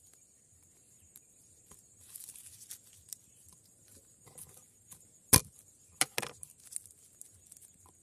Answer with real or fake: real